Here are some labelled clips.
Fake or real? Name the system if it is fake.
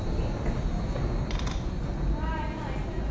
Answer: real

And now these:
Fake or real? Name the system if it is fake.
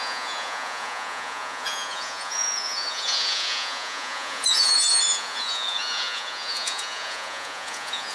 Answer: fake, vocoder, Vocos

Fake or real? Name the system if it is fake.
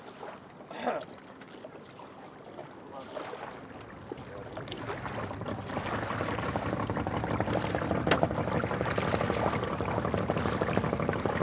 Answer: real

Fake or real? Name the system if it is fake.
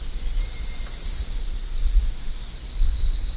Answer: real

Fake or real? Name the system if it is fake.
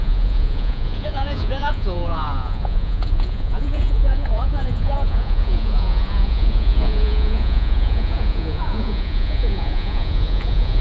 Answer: fake, vocoder, Vocos